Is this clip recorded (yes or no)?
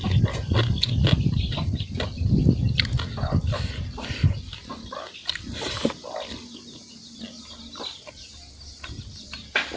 yes